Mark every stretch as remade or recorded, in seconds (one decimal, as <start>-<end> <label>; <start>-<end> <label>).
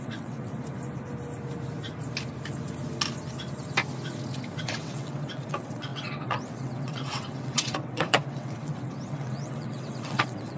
0.0-0.5 remade; 0.5-4.6 recorded; 4.6-10.6 remade